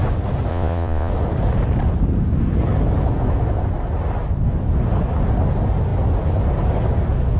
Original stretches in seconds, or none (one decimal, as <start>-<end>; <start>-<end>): 0.0-0.5; 1.1-7.4